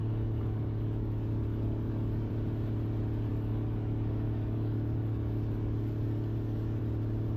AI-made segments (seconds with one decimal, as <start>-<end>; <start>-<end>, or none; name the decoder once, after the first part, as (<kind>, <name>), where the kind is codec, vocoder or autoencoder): 0.0-2.3 (codec, DAC); 3.3-6.8

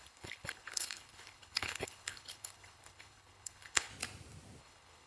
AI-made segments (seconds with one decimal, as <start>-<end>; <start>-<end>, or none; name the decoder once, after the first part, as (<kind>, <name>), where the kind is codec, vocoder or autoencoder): 0.0-3.9 (codec, HILCodec); 4.6-5.1

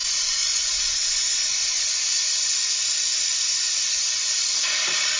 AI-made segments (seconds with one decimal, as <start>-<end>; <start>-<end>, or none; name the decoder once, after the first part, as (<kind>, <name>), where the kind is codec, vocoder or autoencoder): none

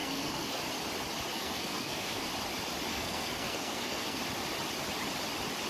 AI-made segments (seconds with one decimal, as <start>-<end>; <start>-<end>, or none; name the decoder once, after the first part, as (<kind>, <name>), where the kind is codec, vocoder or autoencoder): 0.0-0.6 (codec, SNAC); 1.3-2.3; 2.9-4.2

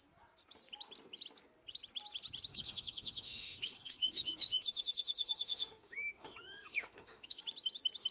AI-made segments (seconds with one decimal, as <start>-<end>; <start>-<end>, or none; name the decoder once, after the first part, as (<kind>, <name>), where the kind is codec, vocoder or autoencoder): 2.5-7.4 (autoencoder, DAC-VAE)

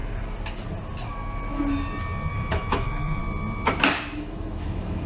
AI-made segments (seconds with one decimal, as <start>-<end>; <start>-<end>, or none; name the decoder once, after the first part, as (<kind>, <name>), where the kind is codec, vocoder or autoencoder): 2.3-3.2 (autoencoder, DAC-VAE); 4.0-5.1

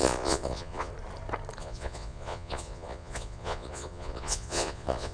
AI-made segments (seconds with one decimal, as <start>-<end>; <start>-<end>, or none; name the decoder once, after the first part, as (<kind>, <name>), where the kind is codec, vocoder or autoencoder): 0.0-0.9 (vocoder, Vocos); 1.6-5.1

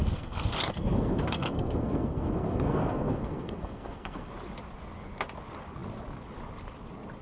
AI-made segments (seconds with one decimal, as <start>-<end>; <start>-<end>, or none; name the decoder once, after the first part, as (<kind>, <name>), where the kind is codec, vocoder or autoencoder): 0.0-4.3 (codec, SNAC)